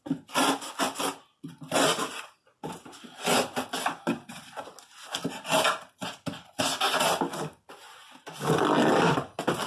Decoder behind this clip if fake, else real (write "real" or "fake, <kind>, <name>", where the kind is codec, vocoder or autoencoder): real